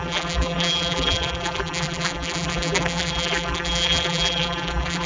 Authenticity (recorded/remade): remade